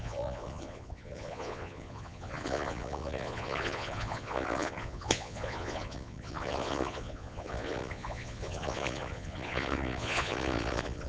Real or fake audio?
fake